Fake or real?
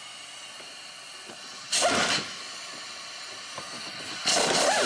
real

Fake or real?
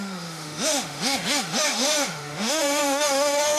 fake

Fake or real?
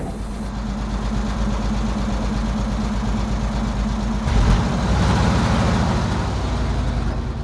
real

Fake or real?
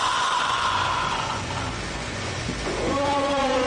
fake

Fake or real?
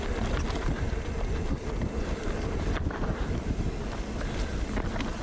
real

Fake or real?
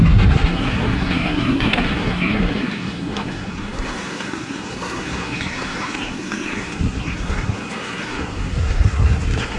fake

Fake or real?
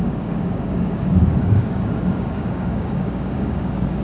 fake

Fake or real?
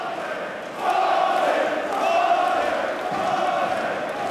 real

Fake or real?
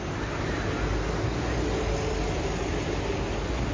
real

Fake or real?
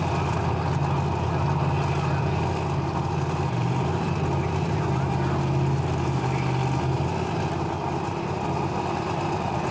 real